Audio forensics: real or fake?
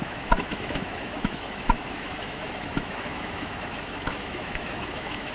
fake